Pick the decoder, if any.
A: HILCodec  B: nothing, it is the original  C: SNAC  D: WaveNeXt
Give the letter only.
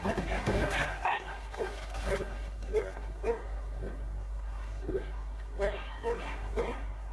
C